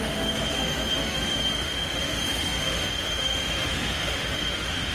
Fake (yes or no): yes